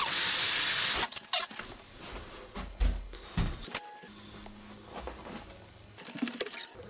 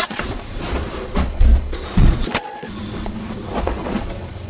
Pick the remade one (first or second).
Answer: second